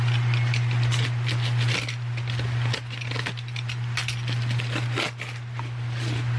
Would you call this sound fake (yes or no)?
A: no